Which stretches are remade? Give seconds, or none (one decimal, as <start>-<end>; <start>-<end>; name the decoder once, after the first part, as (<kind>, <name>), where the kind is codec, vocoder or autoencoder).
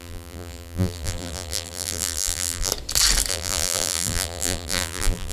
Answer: 0.0-2.7 (vocoder, BigVGAN v2); 3.3-5.3